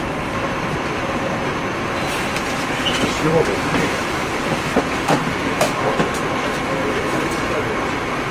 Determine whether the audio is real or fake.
fake